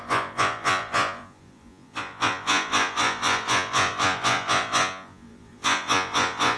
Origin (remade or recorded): remade